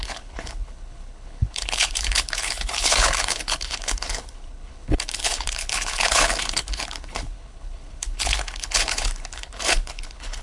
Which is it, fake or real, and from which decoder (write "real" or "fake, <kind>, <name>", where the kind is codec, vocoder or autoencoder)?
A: fake, codec, HILCodec